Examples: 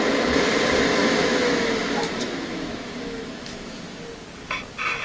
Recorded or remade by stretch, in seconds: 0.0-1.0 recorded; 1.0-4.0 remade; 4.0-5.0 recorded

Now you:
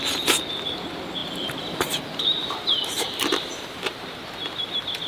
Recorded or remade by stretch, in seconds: 0.0-1.2 recorded; 1.2-4.2 remade; 4.2-5.1 recorded

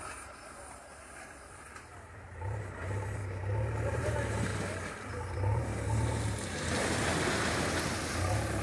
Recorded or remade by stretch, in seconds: 0.0-3.2 remade; 3.2-3.9 recorded; 3.9-4.5 remade; 4.5-5.3 recorded; 5.3-5.7 remade; 5.7-8.1 recorded; 8.1-8.6 remade